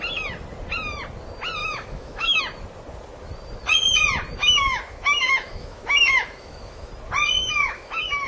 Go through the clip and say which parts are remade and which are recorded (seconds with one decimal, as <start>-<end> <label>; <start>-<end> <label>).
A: 0.0-1.6 recorded; 1.6-2.4 remade; 2.4-4.4 recorded; 4.4-6.9 remade; 6.9-7.4 recorded; 7.4-8.3 remade